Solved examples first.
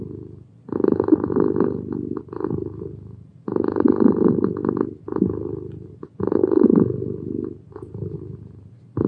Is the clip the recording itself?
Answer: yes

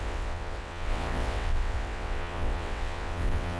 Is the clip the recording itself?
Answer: no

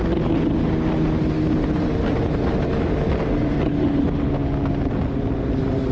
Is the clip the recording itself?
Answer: yes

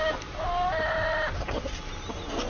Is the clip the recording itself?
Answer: yes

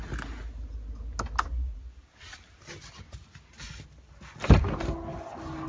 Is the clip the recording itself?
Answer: yes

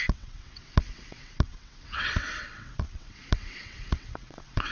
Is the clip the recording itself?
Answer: no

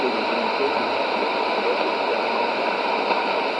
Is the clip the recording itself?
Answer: yes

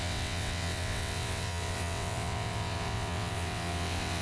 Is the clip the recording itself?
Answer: no